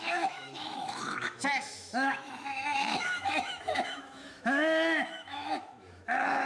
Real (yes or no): no